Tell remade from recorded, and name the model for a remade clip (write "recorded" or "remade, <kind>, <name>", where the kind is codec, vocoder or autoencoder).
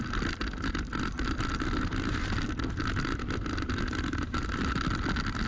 recorded